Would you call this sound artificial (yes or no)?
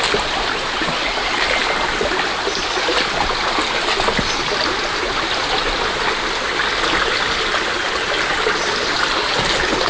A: no